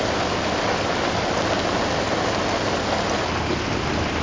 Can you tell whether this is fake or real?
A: real